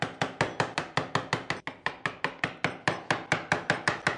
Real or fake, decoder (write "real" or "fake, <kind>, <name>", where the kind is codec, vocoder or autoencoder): real